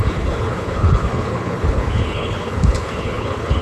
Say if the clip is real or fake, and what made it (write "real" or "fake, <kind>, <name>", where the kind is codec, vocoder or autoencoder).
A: fake, codec, HILCodec